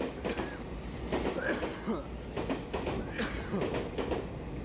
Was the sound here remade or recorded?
recorded